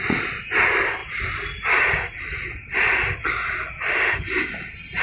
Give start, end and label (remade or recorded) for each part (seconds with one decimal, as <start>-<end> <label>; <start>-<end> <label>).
0.0-5.0 recorded